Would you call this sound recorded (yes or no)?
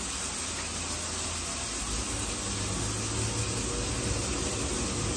yes